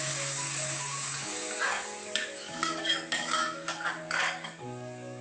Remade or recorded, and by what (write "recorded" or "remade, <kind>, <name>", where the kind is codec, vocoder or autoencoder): remade, codec, DAC